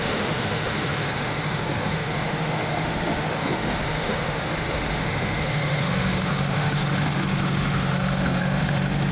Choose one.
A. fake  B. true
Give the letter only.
A